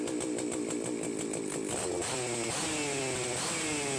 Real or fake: real